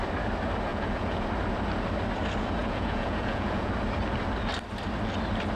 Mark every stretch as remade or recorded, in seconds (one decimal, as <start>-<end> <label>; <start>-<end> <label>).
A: 0.0-0.7 recorded; 0.7-1.3 remade; 1.3-2.6 recorded; 2.6-3.7 remade; 3.7-5.6 recorded